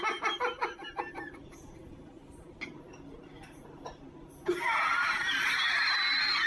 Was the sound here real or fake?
real